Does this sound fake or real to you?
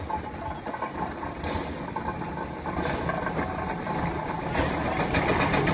real